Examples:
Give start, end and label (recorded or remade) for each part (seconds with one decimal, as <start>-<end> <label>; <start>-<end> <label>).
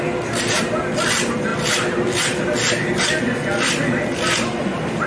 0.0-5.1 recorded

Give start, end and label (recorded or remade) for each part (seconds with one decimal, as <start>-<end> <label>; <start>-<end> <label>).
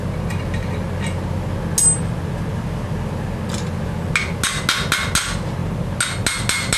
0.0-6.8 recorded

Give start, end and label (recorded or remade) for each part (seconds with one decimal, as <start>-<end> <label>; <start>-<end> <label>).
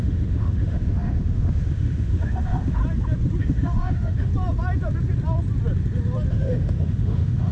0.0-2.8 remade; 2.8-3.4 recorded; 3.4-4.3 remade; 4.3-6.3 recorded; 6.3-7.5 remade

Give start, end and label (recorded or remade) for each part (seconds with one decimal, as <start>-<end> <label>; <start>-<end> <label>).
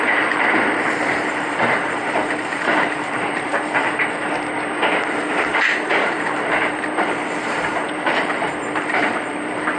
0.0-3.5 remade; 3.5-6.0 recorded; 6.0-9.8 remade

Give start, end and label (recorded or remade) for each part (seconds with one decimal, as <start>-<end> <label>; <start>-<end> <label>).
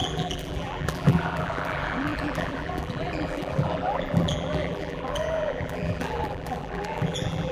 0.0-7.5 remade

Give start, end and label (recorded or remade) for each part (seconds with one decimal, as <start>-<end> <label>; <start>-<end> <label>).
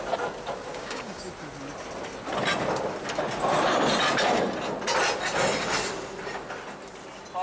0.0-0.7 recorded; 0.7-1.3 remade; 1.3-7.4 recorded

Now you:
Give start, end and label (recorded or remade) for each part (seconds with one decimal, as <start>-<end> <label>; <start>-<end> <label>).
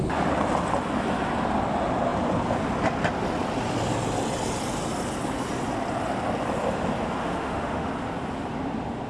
0.0-7.2 recorded; 7.2-7.9 remade; 7.9-9.1 recorded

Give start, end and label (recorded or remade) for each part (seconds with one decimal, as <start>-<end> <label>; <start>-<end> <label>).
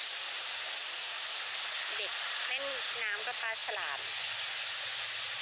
0.0-5.4 recorded